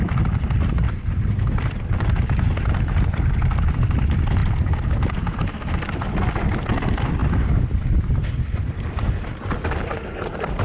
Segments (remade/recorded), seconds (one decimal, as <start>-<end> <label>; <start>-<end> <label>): 0.0-10.6 recorded